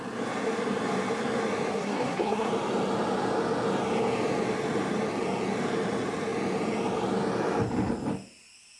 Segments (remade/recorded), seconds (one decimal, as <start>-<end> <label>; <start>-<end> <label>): 0.0-1.7 recorded; 1.7-2.5 remade; 2.5-8.8 recorded